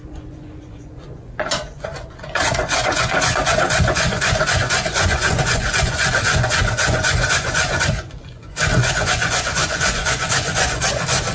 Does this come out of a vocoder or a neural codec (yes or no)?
yes